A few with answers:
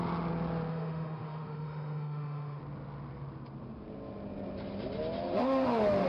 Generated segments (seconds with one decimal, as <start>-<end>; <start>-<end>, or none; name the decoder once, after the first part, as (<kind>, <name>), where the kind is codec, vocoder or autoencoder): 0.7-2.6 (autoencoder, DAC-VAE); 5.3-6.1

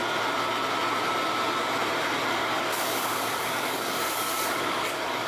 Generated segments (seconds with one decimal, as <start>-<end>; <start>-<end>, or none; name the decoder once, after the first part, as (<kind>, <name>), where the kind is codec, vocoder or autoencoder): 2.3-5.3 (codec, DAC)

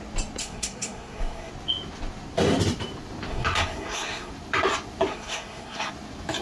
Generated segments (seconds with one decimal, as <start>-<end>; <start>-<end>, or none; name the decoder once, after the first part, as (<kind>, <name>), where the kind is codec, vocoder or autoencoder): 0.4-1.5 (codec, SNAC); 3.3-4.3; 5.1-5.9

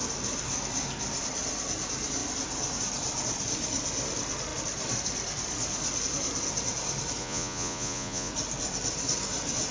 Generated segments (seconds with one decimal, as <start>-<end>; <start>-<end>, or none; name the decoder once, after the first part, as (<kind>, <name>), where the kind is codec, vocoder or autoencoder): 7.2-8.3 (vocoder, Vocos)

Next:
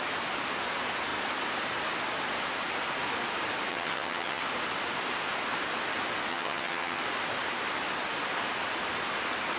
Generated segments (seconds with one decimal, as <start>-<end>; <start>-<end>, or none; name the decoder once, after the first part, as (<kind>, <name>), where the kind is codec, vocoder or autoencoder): 3.7-4.4 (vocoder, HiFi-GAN); 6.3-7.0

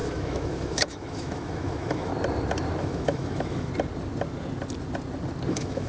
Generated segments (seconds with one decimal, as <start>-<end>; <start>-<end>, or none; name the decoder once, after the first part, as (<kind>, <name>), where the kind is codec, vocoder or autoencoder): 0.0-2.1 (autoencoder, DAC-VAE); 2.8-3.7; 5.5-5.9

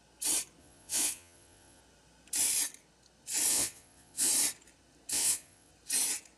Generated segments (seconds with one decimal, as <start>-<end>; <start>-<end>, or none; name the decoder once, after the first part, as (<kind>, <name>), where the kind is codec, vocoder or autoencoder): 0.6-1.8 (vocoder, Vocos); 3.5-4.3; 5.1-5.7